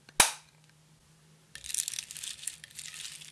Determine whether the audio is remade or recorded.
recorded